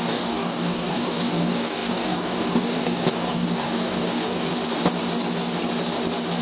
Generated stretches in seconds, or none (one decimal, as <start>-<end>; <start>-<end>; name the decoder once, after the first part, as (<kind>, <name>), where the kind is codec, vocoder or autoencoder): 0.0-4.5 (codec, DAC)